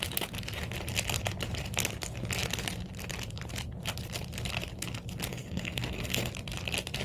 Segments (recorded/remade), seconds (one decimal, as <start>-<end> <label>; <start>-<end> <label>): 0.0-5.3 recorded; 5.3-6.3 remade; 6.3-7.0 recorded